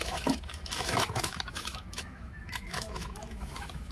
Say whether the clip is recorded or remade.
remade